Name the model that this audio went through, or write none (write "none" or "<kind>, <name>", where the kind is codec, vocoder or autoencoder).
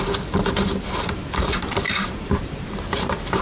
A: vocoder, BigVGAN v2